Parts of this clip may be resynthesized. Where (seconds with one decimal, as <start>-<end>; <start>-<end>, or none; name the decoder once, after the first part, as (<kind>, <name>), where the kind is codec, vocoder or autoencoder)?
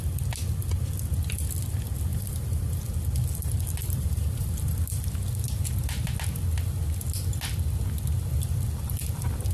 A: 2.1-2.8 (vocoder, BigVGAN v2); 3.8-4.5